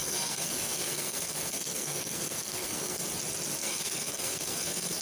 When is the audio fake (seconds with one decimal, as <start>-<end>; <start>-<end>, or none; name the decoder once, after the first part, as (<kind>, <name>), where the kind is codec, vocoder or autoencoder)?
0.0-3.0 (codec, SNAC); 3.6-5.0